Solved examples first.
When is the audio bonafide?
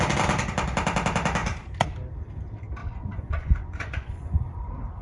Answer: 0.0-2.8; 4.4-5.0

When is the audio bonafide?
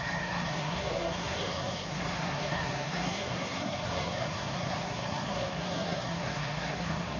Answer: none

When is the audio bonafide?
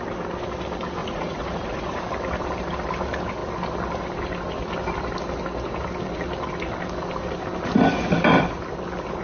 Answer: 0.0-1.0; 2.0-9.2